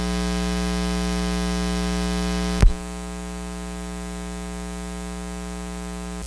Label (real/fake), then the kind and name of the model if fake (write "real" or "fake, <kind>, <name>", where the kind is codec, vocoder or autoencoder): real